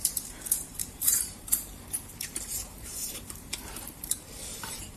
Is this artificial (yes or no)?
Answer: yes